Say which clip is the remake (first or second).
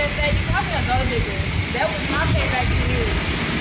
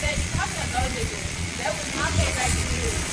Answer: second